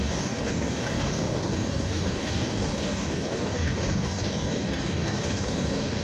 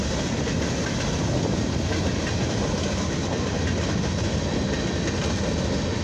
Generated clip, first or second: first